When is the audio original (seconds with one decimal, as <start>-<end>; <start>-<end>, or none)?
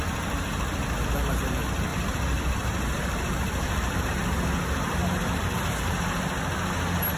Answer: 0.0-1.9; 4.1-5.0; 6.2-7.2